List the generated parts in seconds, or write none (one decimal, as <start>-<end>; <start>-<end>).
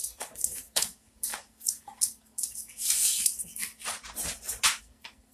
0.0-3.8; 4.8-5.3